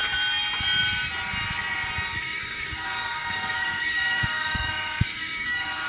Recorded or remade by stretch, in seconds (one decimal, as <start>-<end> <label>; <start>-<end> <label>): 0.0-2.1 recorded; 2.1-5.9 remade